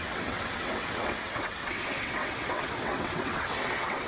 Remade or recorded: remade